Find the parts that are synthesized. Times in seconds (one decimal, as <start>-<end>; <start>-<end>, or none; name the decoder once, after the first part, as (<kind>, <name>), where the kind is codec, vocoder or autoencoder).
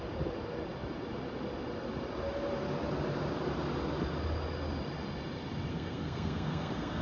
5.7-7.0 (codec, SNAC)